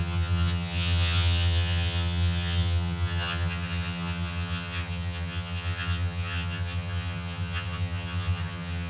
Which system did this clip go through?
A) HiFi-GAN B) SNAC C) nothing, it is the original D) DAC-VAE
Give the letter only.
A